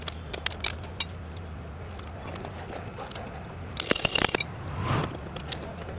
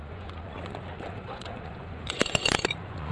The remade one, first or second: second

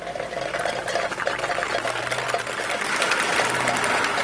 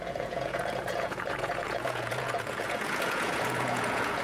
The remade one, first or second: second